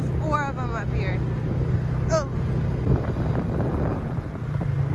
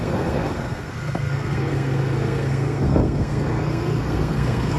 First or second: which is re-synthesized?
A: second